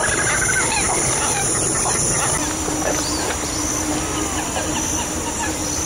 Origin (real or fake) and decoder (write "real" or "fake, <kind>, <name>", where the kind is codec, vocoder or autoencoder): real